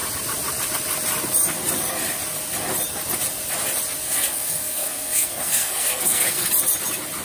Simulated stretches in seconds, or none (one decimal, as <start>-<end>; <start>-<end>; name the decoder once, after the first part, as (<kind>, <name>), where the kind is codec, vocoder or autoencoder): 4.0-6.5 (codec, SNAC)